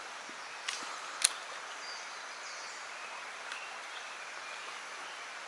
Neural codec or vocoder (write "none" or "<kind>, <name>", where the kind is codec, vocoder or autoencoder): none